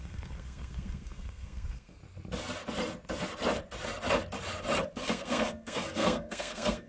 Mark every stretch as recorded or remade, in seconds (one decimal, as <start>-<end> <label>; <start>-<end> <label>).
0.0-2.0 remade; 2.0-4.9 recorded; 4.9-6.9 remade